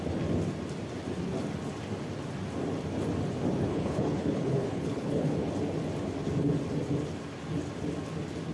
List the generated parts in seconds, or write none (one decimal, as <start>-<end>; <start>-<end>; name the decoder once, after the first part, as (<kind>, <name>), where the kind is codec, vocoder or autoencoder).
3.7-5.5 (codec, HILCodec)